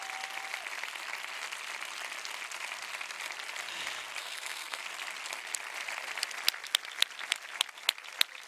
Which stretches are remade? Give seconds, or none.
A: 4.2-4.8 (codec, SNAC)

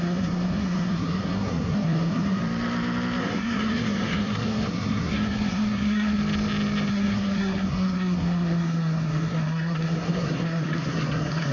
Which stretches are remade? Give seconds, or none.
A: 0.0-2.4 (codec, SNAC); 3.2-6.2; 6.9-11.5

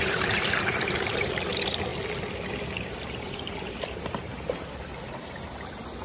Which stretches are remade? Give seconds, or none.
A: 0.0-1.9 (vocoder, BigVGAN v2); 2.9-6.0

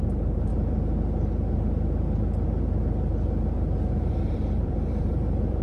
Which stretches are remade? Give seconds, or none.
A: 0.0-0.5 (vocoder, BigVGAN v2); 3.9-5.6

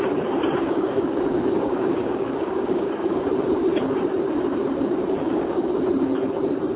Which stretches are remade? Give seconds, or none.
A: 0.6-3.2 (codec, DAC); 5.2-5.7

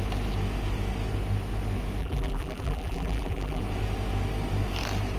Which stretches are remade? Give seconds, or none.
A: 2.0-3.6 (vocoder, BigVGAN v2)

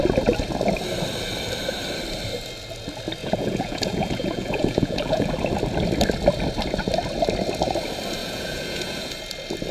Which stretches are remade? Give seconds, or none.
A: 3.2-5.3 (vocoder, Vocos); 8.2-9.1

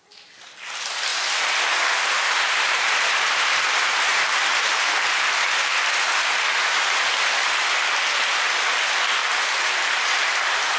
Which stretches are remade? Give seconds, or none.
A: 1.1-4.8 (vocoder, BigVGAN v2)